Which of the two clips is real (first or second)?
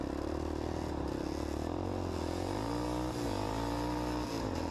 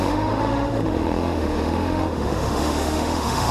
first